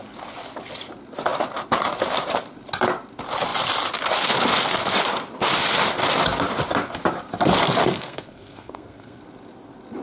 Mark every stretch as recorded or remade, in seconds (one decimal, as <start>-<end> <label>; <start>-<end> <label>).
0.0-7.8 recorded; 7.8-9.2 remade; 9.2-10.0 recorded